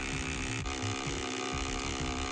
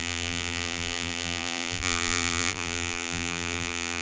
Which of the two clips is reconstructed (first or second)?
second